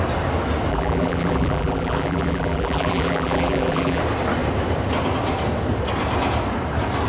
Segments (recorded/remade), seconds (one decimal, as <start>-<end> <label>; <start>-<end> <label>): 0.0-0.7 recorded; 0.7-4.0 remade; 4.0-7.1 recorded